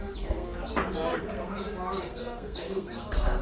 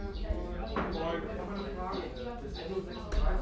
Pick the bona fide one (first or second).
second